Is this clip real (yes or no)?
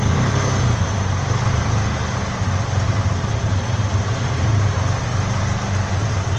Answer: yes